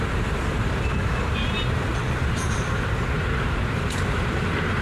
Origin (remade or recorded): remade